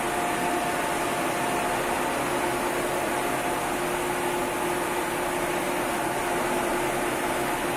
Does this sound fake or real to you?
real